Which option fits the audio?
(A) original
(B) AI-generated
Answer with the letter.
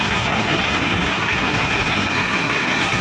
B